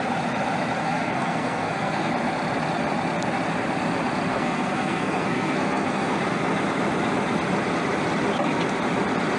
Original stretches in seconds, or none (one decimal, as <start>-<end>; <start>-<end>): 0.0-0.8; 2.1-4.3; 6.2-9.4